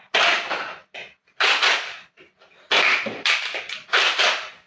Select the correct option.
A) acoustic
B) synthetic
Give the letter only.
A